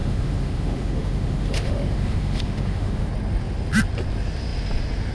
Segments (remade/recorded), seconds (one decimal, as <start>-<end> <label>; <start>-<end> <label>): 0.0-3.1 remade; 3.1-5.1 recorded